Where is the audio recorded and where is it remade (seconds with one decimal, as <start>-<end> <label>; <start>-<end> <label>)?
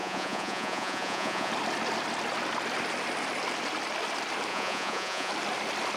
0.0-1.5 remade; 1.5-4.5 recorded; 4.5-5.3 remade; 5.3-6.0 recorded